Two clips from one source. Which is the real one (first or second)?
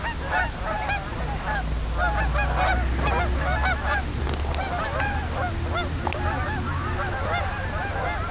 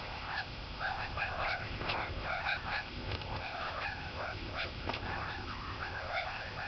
first